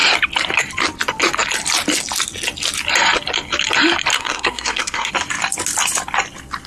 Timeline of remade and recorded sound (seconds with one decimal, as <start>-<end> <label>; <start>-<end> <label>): 0.0-4.1 recorded; 4.1-5.1 remade; 5.1-6.7 recorded

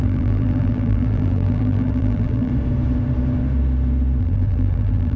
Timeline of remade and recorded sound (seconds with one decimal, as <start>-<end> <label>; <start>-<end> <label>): 0.0-2.5 remade; 2.5-4.2 recorded; 4.2-5.2 remade

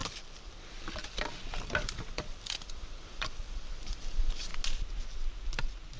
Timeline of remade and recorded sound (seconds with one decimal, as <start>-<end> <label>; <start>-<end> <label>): 0.0-4.5 remade; 4.5-6.0 recorded